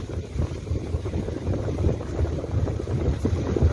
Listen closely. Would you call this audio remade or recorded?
remade